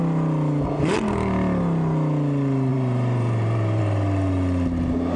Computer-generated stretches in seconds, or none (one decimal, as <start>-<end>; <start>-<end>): 2.7-3.8